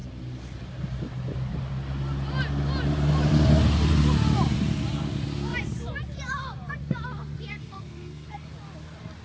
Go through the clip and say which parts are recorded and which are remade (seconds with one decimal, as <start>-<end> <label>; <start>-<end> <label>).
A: 0.0-7.5 recorded; 7.5-8.5 remade; 8.5-9.2 recorded

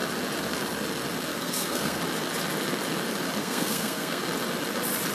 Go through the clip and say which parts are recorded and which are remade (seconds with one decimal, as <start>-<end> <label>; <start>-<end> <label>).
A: 0.0-1.3 recorded; 1.3-2.0 remade; 2.0-3.4 recorded; 3.4-4.2 remade; 4.2-5.1 recorded

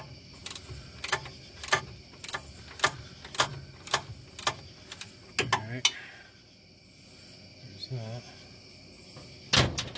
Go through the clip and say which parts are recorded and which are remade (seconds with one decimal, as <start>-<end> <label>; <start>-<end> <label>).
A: 0.0-10.0 recorded

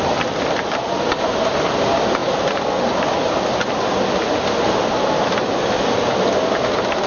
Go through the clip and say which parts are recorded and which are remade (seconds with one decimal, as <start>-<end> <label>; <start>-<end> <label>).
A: 0.0-7.1 recorded

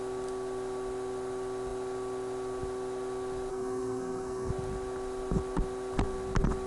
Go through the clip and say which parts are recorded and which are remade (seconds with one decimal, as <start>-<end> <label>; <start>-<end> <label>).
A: 0.0-3.5 recorded; 3.5-4.5 remade; 4.5-6.7 recorded

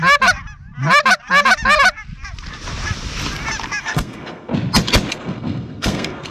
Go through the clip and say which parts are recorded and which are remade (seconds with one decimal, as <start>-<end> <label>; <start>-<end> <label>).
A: 0.0-3.8 recorded; 3.8-4.5 remade; 4.5-5.1 recorded; 5.1-6.3 remade